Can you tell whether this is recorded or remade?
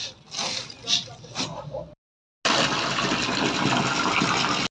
recorded